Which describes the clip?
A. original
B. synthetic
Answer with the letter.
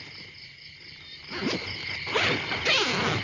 A